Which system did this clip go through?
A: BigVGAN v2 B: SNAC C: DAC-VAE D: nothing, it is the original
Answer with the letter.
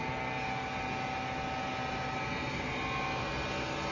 D